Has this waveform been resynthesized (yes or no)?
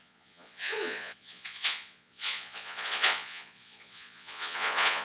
yes